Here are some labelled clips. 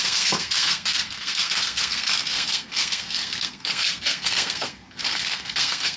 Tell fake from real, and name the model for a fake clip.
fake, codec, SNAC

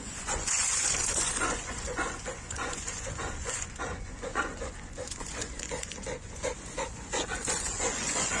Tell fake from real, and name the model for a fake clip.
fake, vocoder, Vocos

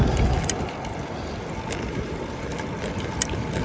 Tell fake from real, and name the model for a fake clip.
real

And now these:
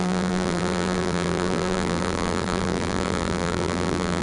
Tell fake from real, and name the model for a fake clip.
fake, vocoder, BigVGAN v2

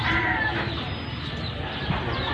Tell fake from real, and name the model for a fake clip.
real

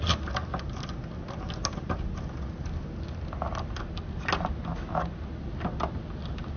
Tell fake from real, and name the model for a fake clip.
real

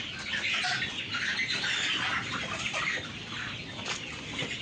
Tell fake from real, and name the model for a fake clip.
real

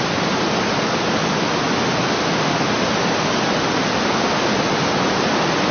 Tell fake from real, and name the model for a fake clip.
real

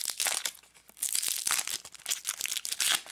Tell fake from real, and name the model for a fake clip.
real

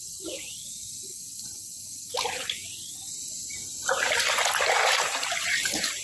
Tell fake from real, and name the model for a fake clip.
real